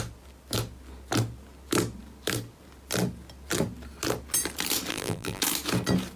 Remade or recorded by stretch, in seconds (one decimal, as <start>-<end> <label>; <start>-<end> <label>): 0.0-4.9 recorded; 4.9-5.4 remade; 5.4-6.2 recorded